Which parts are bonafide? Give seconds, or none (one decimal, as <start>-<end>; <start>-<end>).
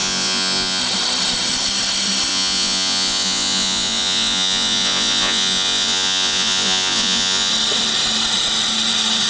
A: 0.8-2.3; 7.5-9.3